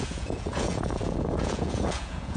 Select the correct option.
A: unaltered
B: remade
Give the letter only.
B